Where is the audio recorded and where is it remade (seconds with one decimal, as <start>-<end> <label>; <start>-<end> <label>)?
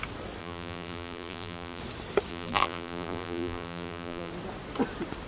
0.0-0.4 recorded; 0.4-1.8 remade; 1.8-2.3 recorded; 2.3-4.3 remade; 4.3-5.3 recorded